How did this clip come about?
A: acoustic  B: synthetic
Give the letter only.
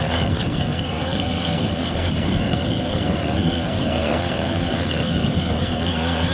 B